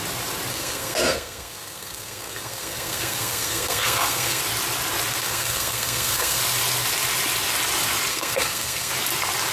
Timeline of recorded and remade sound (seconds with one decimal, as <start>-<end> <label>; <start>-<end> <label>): 0.0-0.5 recorded; 0.5-4.4 remade; 4.4-5.2 recorded; 5.2-6.4 remade; 6.4-8.1 recorded; 8.1-8.9 remade; 8.9-9.5 recorded